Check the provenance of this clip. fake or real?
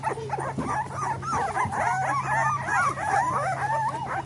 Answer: real